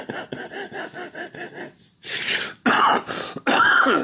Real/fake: real